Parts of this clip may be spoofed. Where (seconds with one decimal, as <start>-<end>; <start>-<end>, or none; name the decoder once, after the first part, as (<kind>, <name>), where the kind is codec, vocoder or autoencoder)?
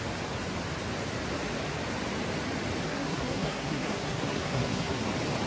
2.9-5.0 (codec, SNAC)